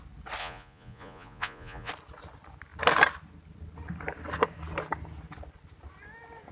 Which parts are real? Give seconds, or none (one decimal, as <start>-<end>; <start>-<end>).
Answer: 0.0-0.4; 1.9-6.5